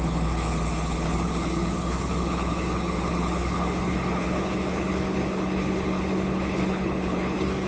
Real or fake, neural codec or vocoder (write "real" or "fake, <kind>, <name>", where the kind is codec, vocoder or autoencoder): fake, codec, HILCodec